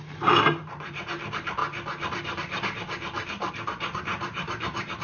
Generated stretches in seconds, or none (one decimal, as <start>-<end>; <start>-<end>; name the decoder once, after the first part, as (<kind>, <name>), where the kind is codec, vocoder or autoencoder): 0.0-1.6 (vocoder, BigVGAN v2); 3.5-5.0